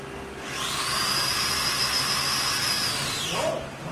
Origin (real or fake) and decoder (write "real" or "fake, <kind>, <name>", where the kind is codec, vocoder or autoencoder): fake, vocoder, BigVGAN v2